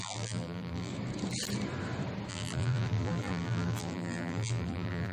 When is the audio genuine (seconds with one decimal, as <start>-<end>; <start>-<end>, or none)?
0.9-2.3